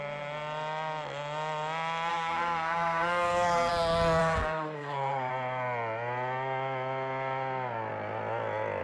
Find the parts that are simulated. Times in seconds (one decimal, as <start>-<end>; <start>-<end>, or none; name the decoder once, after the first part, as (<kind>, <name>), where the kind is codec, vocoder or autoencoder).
2.1-3.7 (codec, SNAC); 4.2-5.3